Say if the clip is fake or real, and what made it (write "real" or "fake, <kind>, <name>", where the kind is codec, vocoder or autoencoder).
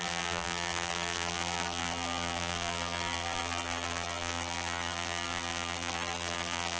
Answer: fake, vocoder, BigVGAN v2